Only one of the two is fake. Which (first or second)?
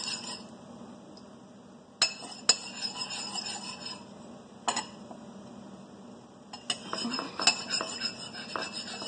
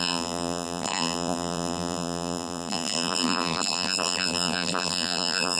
second